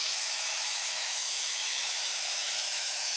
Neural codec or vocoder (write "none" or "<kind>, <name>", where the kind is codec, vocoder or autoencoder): autoencoder, DAC-VAE